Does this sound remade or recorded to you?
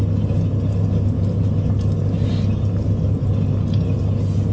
recorded